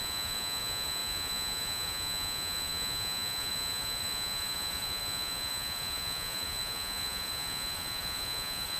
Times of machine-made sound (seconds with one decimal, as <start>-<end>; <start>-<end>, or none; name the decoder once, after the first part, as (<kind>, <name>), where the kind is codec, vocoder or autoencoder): 0.0-8.8 (vocoder, Vocos)